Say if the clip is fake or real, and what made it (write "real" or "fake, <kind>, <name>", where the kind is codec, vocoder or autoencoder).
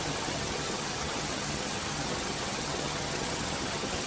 fake, vocoder, HiFi-GAN